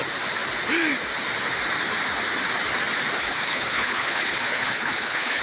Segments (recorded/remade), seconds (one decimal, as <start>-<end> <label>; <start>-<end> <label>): 0.0-3.2 recorded; 3.2-5.4 remade